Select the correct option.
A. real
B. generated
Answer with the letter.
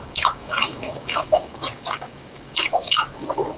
B